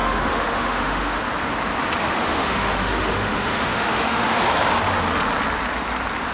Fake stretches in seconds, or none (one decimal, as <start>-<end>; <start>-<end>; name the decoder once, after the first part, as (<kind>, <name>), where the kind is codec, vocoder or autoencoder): 0.0-1.2 (autoencoder, DAC-VAE); 2.0-4.4